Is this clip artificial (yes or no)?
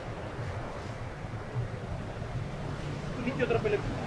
no